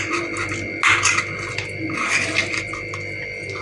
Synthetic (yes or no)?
no